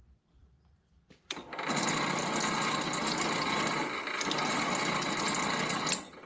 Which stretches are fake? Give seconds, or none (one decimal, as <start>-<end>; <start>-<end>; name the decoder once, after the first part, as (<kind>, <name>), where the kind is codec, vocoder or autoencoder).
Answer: none